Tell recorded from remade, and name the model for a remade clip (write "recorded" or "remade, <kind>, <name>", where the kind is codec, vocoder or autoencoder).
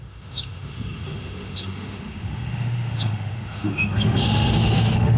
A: remade, autoencoder, DAC-VAE